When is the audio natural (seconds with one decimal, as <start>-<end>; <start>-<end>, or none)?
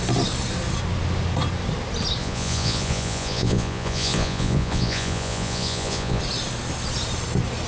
0.0-2.2; 6.2-7.7